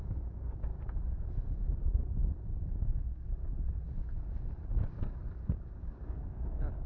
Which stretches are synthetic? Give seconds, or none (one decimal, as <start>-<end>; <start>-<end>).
0.0-0.7; 4.7-5.2; 5.8-6.9